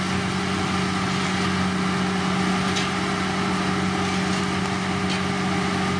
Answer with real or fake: real